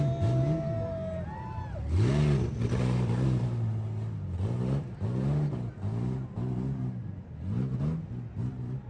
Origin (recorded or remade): recorded